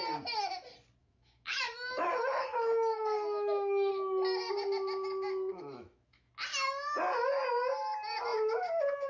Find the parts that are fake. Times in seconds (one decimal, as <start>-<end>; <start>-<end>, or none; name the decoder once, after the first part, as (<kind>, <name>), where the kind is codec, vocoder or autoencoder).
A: 1.0-3.9 (autoencoder, DAC-VAE); 5.5-6.3